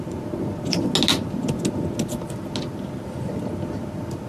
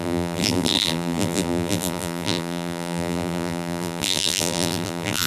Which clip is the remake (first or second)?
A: second